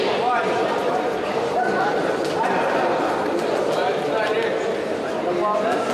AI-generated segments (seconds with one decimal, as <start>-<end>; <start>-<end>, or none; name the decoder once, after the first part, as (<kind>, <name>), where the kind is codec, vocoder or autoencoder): 0.8-4.3 (vocoder, BigVGAN v2)

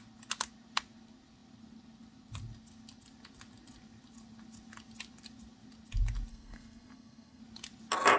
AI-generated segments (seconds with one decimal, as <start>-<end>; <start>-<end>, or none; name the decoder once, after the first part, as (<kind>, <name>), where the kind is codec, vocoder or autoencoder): 6.3-7.4 (codec, SNAC)

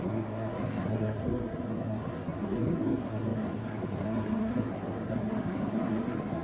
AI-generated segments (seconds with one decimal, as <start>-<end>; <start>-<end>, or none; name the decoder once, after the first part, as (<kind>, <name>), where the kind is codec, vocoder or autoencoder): 0.0-6.4 (codec, SNAC)

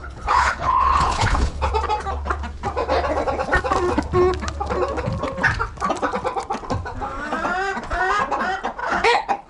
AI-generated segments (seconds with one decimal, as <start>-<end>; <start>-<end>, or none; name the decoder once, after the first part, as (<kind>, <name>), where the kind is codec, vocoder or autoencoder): 0.0-1.7 (codec, HILCodec); 8.8-9.5

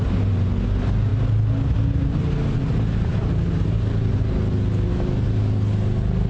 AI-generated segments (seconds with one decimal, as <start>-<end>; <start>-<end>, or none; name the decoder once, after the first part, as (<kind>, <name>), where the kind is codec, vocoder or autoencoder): none

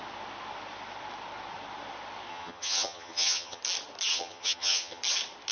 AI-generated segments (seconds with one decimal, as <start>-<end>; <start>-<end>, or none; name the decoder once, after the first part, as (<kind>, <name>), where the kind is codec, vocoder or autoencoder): 2.3-3.6 (vocoder, HiFi-GAN); 4.1-5.0

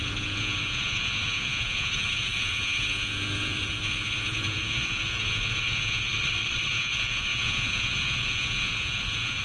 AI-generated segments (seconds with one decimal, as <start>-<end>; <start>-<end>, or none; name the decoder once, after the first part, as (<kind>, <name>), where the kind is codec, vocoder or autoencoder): 0.0-6.1 (vocoder, Vocos); 6.7-9.4

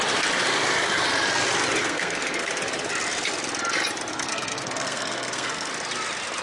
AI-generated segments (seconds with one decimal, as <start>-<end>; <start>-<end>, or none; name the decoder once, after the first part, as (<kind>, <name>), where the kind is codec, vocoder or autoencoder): 1.8-2.5 (codec, SNAC); 4.1-5.7